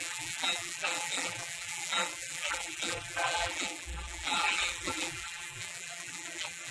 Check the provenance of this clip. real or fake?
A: fake